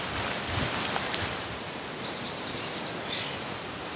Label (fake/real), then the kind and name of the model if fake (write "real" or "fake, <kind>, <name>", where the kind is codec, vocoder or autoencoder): real